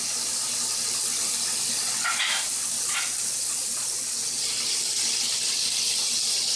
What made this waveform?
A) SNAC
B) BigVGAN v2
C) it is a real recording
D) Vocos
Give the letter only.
C